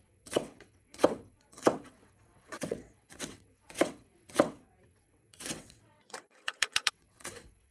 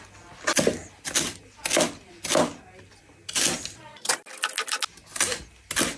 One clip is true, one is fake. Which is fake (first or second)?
first